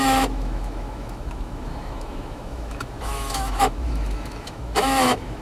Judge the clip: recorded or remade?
remade